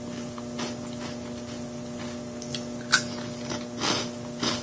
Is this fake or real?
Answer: real